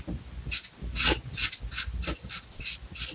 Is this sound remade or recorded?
recorded